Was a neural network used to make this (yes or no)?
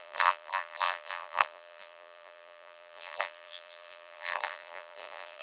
yes